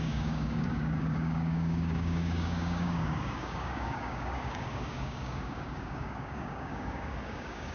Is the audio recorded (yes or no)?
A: no